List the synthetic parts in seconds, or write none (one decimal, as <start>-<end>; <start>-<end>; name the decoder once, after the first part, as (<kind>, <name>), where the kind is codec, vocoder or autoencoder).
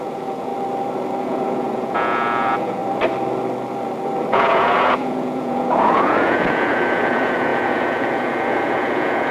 0.0-0.5 (vocoder, Vocos); 1.2-2.8; 4.3-9.3